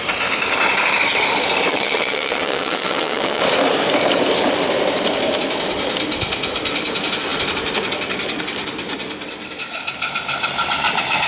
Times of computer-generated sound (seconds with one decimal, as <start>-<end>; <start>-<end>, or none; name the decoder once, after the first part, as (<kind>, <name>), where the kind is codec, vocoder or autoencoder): 1.7-3.4 (vocoder, WaveNeXt)